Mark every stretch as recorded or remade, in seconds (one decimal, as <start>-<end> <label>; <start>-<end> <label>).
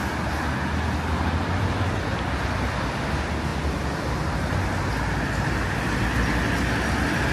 0.0-7.3 recorded